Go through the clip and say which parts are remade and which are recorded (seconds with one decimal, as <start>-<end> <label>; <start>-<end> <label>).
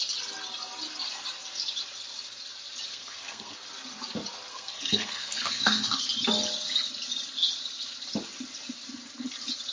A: 0.0-2.9 recorded; 2.9-3.6 remade; 3.6-4.5 recorded; 4.5-6.0 remade; 6.0-9.7 recorded